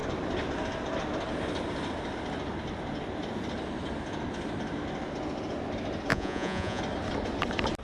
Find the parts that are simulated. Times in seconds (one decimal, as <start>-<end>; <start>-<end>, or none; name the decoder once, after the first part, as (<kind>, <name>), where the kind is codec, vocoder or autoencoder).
6.1-6.8 (vocoder, Vocos)